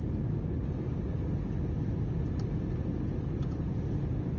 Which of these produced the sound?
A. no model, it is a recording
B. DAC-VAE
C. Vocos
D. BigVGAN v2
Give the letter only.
A